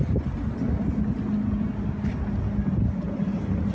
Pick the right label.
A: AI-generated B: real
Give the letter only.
B